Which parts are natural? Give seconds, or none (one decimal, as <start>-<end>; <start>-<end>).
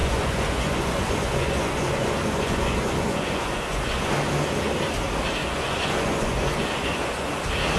4.1-5.4; 7.3-7.8